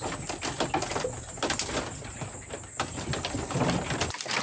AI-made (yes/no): no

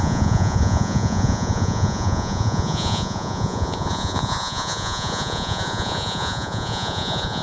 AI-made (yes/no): yes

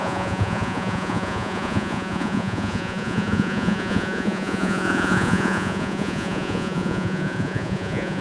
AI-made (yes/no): yes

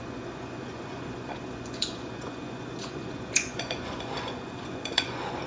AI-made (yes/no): yes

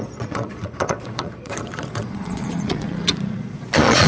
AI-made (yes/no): yes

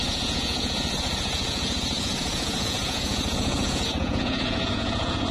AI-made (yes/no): yes